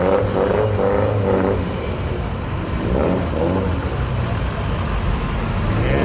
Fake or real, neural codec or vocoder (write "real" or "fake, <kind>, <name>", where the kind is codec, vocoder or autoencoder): real